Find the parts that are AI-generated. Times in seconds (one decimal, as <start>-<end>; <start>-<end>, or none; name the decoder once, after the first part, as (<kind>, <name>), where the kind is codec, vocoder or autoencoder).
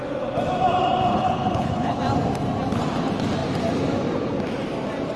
1.1-2.0 (codec, HILCodec)